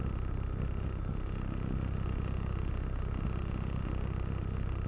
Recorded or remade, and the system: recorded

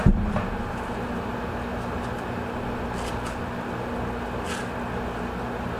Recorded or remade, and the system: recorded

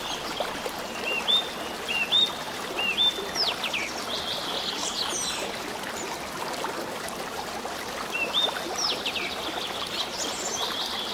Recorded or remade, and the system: recorded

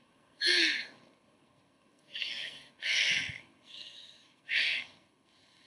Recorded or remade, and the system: remade, codec, SNAC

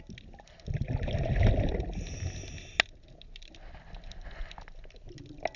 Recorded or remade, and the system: recorded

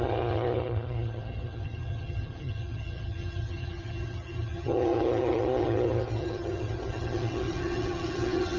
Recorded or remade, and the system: remade, vocoder, HiFi-GAN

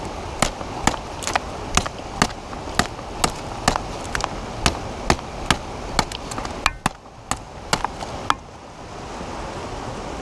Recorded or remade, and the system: recorded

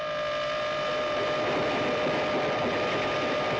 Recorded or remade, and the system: recorded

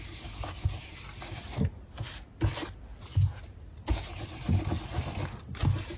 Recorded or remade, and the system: recorded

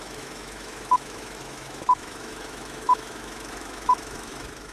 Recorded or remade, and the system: remade, autoencoder, DAC-VAE